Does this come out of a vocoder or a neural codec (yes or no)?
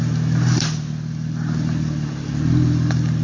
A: no